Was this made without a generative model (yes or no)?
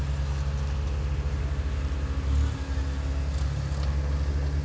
yes